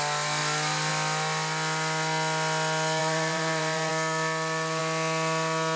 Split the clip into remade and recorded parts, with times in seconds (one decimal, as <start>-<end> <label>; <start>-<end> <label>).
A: 0.0-3.0 recorded; 3.0-3.9 remade; 3.9-5.8 recorded